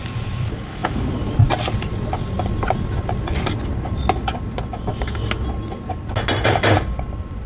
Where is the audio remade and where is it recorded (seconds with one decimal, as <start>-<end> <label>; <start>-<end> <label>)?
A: 0.0-4.9 remade; 4.9-5.6 recorded; 5.6-7.5 remade